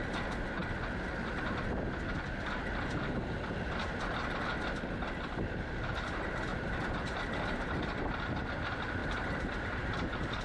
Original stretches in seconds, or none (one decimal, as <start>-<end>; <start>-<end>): 0.0-6.5; 7.8-9.0